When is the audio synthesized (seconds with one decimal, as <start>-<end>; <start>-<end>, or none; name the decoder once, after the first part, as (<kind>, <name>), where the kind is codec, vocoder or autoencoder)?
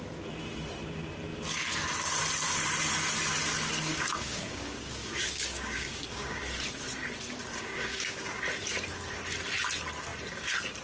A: 3.9-6.4 (codec, DAC); 7.5-8.4